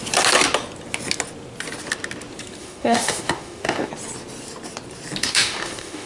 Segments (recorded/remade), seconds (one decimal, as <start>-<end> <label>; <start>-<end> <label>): 0.0-2.6 recorded; 2.6-3.9 remade; 3.9-5.2 recorded; 5.2-6.1 remade